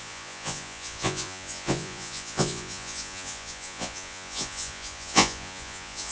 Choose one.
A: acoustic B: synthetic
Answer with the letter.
B